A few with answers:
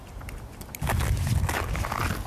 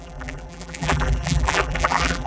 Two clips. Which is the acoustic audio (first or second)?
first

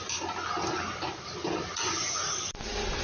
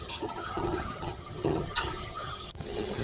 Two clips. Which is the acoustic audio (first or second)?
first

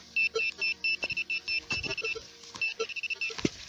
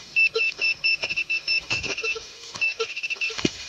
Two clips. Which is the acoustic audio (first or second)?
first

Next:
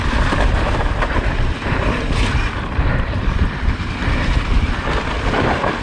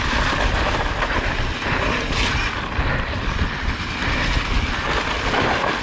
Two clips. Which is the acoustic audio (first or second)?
second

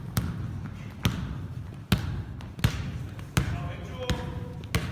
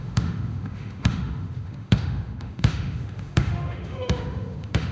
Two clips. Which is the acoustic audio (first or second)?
first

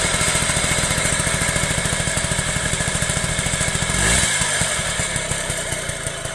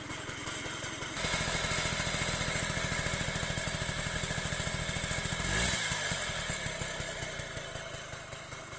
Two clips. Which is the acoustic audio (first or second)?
second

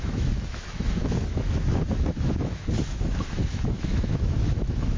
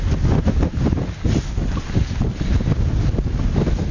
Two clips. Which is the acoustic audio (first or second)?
second